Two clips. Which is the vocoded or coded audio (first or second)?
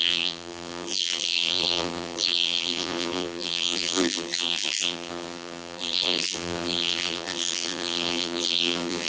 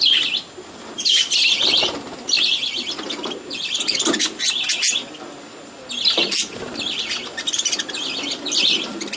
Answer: first